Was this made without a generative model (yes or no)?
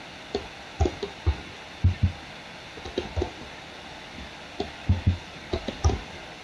yes